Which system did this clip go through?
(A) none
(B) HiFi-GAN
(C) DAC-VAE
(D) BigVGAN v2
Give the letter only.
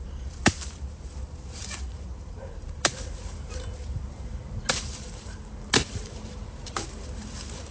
D